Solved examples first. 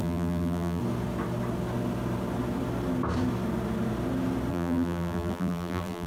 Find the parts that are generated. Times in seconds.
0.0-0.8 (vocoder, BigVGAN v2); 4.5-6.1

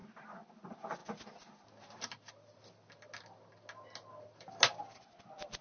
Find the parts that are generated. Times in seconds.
none

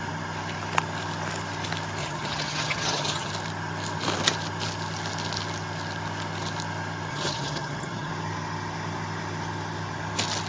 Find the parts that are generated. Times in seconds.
2.0-3.3 (vocoder, HiFi-GAN); 7.1-8.1